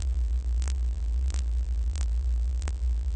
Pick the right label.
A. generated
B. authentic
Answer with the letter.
A